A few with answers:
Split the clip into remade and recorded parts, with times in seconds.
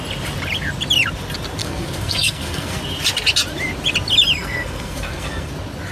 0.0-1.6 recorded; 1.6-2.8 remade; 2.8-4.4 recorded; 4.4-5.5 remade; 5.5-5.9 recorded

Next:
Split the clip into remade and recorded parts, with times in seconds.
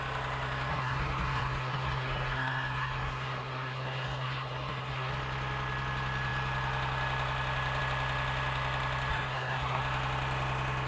0.0-0.7 recorded; 0.7-5.1 remade; 5.1-9.1 recorded; 9.1-9.8 remade; 9.8-10.9 recorded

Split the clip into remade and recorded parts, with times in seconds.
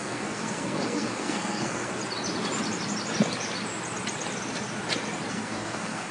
0.0-2.0 remade; 2.0-5.3 recorded; 5.3-6.1 remade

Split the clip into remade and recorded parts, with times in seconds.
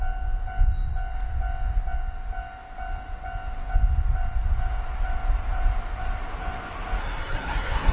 0.0-7.0 recorded; 7.0-7.9 remade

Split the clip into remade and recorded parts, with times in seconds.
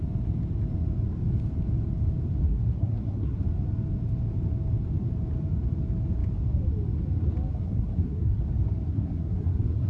0.0-2.4 recorded; 2.4-3.4 remade; 3.4-7.5 recorded; 7.5-8.4 remade; 8.4-8.9 recorded; 8.9-9.9 remade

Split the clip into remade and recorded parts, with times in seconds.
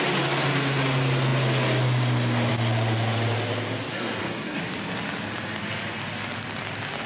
0.0-3.9 recorded; 3.9-4.6 remade; 4.6-7.1 recorded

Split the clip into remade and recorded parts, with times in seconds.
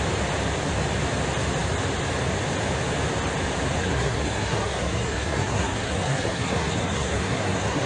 0.0-3.8 recorded; 3.8-7.9 remade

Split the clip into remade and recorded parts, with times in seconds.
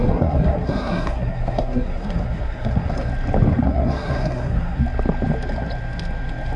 0.0-3.1 remade; 3.1-3.6 recorded; 3.6-4.8 remade; 4.8-6.6 recorded